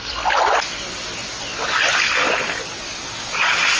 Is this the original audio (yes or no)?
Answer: yes